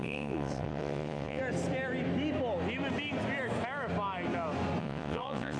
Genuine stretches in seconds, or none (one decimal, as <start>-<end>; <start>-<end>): 1.4-4.8